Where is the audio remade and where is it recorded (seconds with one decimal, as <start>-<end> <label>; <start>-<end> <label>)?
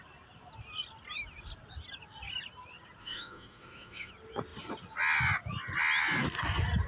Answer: 0.0-3.0 recorded; 3.0-4.1 remade; 4.1-6.9 recorded